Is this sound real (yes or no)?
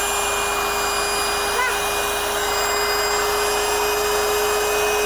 yes